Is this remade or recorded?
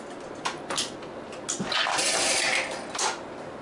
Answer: recorded